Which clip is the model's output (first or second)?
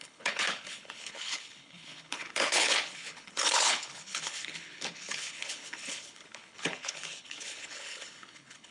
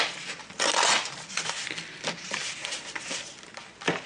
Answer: first